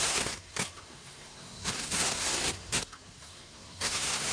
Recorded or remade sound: remade